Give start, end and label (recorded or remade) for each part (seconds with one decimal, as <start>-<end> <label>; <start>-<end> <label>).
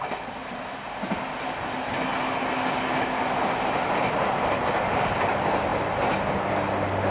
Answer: 0.0-7.1 recorded